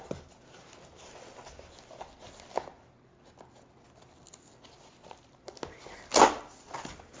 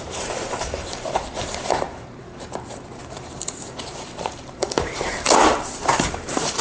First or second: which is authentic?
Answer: first